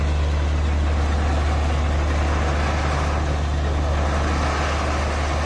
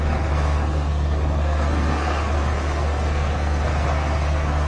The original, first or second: first